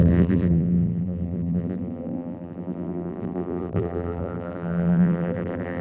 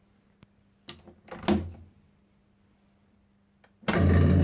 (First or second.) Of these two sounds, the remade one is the first